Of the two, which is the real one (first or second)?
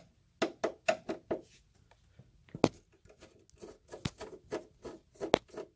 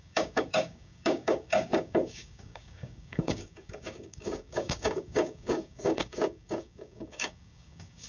first